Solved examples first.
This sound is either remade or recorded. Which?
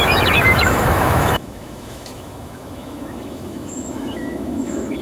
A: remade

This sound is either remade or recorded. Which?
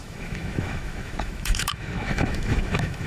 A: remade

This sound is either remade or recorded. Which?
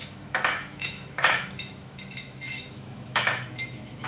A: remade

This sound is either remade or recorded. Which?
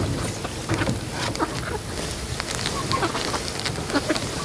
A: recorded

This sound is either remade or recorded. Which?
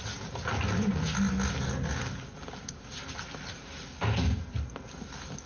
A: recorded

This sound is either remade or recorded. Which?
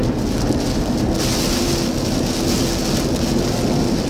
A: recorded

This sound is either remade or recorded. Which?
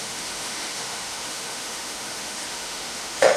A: remade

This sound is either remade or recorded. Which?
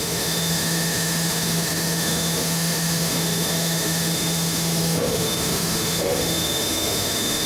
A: remade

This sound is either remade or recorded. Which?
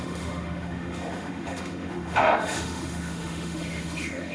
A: remade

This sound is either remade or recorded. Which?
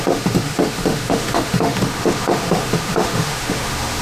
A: remade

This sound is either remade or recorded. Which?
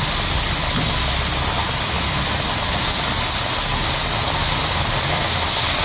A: recorded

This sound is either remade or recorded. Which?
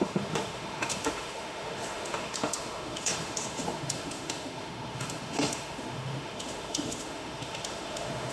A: remade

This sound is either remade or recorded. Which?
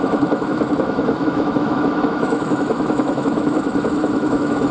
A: remade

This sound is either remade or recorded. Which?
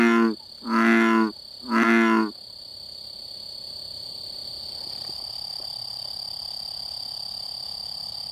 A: recorded